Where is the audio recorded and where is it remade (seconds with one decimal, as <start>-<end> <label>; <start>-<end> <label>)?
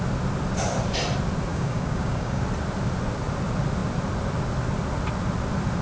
0.0-1.5 recorded; 1.5-2.4 remade; 2.4-5.8 recorded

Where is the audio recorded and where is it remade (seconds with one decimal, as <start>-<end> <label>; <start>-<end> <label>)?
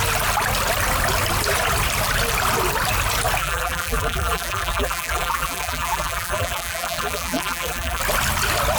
0.0-3.4 recorded; 3.4-8.0 remade; 8.0-8.8 recorded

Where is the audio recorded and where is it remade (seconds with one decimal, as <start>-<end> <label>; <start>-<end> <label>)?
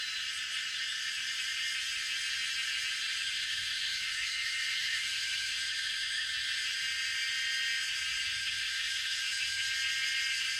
0.0-3.2 recorded; 3.2-6.3 remade; 6.3-8.4 recorded; 8.4-9.7 remade; 9.7-10.6 recorded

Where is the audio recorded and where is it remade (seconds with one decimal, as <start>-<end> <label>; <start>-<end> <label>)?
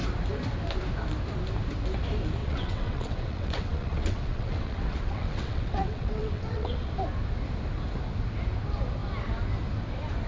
0.0-2.4 recorded; 2.4-6.9 remade; 6.9-10.3 recorded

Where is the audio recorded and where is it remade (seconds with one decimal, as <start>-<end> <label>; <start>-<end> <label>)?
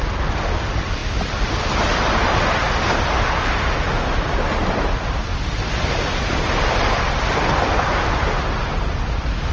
0.0-9.5 recorded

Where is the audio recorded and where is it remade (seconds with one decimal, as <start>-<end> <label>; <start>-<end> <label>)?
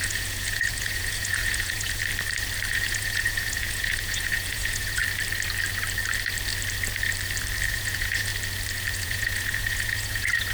0.0-2.0 remade; 2.0-2.7 recorded; 2.7-5.0 remade; 5.0-7.7 recorded; 7.7-8.3 remade; 8.3-8.9 recorded; 8.9-10.5 remade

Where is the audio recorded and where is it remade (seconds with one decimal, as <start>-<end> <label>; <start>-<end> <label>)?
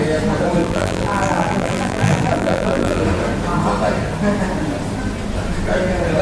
0.0-0.6 recorded; 0.6-3.0 remade; 3.0-6.2 recorded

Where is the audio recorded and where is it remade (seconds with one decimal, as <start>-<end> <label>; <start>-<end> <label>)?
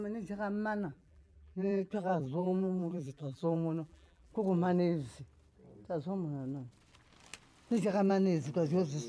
0.0-0.9 recorded; 0.9-4.3 remade; 4.3-9.1 recorded